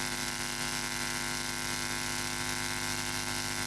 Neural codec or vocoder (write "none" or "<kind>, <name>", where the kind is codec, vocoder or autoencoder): none